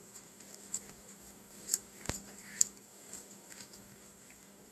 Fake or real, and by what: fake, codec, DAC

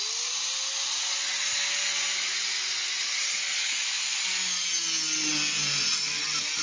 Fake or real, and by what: real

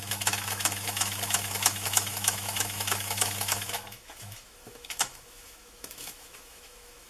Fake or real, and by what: fake, autoencoder, DAC-VAE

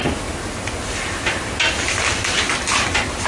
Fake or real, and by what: real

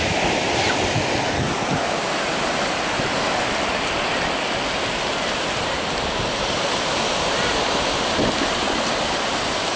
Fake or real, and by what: real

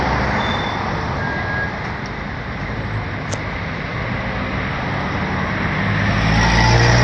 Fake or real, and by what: real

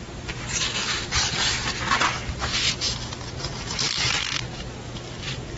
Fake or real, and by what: real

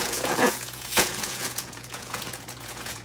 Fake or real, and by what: fake, vocoder, Vocos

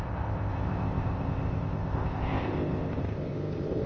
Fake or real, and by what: fake, codec, ZipCodec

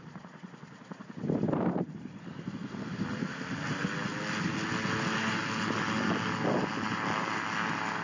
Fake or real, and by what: real